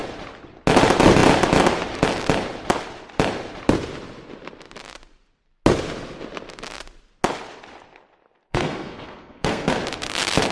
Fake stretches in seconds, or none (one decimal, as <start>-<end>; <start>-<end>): 8.5-9.8